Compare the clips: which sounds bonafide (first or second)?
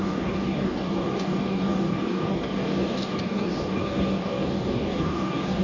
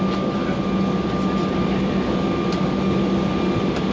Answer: second